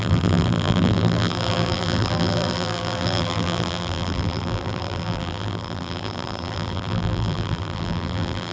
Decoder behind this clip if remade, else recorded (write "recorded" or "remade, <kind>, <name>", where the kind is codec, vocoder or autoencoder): remade, vocoder, BigVGAN v2